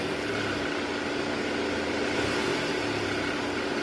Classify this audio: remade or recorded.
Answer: recorded